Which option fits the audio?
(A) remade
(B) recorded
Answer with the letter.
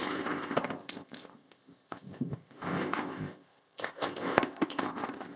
A